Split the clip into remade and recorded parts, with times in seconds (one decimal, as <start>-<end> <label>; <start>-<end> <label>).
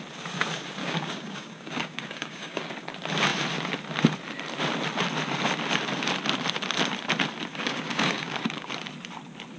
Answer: 0.0-0.8 recorded; 0.8-2.7 remade; 2.7-7.5 recorded; 7.5-8.7 remade; 8.7-9.6 recorded